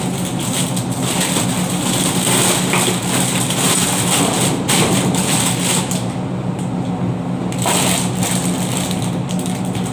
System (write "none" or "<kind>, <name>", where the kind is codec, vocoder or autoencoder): none